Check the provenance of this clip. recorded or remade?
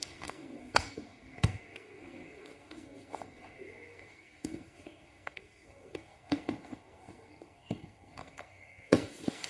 remade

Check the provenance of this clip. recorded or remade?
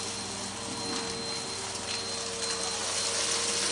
recorded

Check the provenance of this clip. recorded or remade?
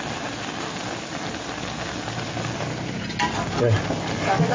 recorded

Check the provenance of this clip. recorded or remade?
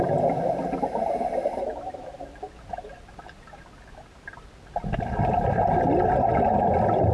recorded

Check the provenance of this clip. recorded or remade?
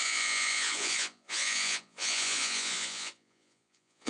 remade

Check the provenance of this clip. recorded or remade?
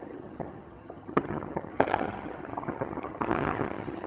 remade